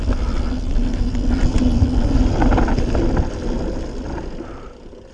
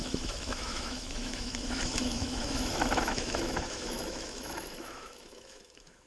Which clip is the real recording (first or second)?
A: first